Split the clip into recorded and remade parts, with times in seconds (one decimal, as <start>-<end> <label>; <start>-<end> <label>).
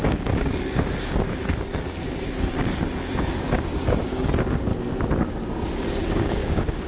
0.0-4.7 remade; 4.7-5.2 recorded; 5.2-6.9 remade